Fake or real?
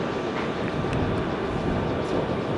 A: real